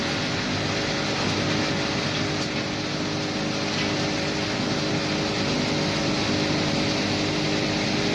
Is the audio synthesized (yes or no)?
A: no